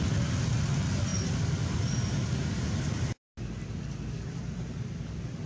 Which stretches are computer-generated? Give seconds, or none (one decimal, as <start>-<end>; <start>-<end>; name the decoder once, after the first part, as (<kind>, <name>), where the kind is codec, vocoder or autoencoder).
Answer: none